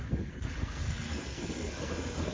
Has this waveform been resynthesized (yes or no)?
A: yes